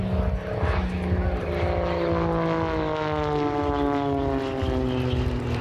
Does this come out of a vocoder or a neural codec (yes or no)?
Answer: no